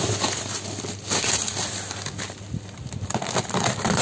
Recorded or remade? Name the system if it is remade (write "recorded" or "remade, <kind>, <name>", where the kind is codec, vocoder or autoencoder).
remade, vocoder, BigVGAN v2